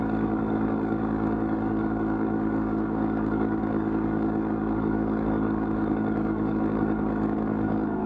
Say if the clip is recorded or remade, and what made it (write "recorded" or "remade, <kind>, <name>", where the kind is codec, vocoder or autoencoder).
remade, codec, DAC